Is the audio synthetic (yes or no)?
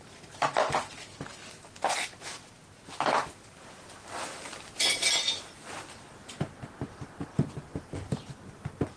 yes